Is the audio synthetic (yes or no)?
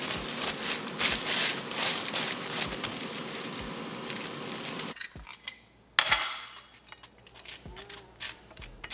no